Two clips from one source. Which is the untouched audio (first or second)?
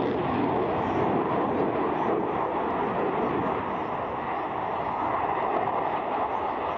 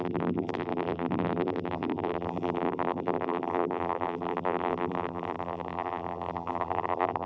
first